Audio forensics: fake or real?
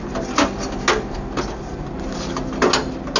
real